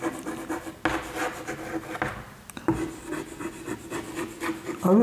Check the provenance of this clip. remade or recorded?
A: recorded